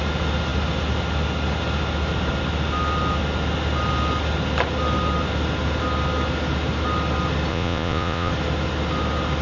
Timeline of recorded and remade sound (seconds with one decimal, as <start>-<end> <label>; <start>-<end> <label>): 0.0-7.5 recorded; 7.5-8.3 remade; 8.3-9.4 recorded